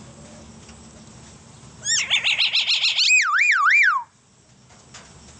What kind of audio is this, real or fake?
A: real